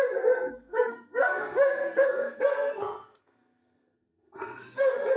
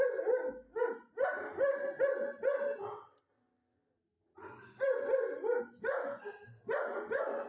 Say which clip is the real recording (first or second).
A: second